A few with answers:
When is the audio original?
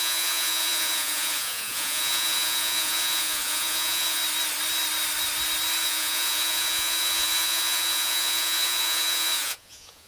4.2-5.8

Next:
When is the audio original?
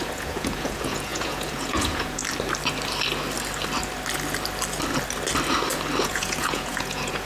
2.2-6.0